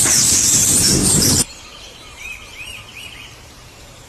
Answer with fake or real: fake